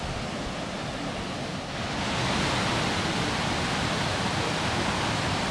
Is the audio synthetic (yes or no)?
no